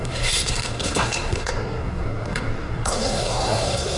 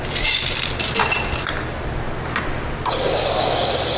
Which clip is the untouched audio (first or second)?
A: second